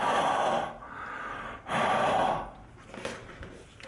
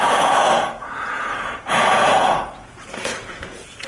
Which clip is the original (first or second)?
first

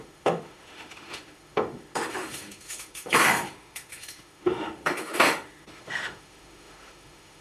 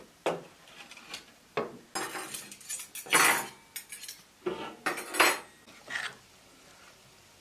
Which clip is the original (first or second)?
second